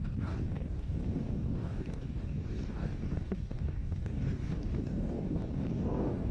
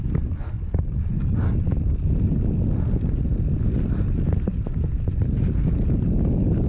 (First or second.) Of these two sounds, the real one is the second